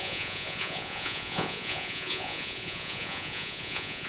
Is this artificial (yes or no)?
yes